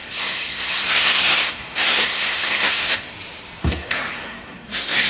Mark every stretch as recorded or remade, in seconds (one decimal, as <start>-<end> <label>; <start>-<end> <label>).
0.0-3.1 remade; 3.1-3.6 recorded; 3.6-5.1 remade